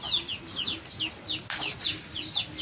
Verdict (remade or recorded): recorded